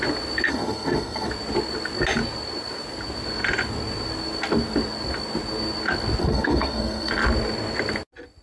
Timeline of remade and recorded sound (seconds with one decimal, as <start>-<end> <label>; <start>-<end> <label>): 0.0-0.5 recorded; 0.5-1.3 remade; 1.3-6.2 recorded; 6.2-7.1 remade; 7.1-8.4 recorded